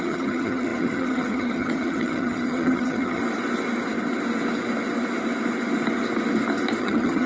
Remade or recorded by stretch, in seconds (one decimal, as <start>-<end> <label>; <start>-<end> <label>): 0.0-3.2 remade; 3.2-6.8 recorded; 6.8-7.3 remade